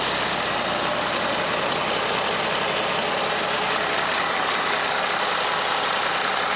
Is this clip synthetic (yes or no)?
no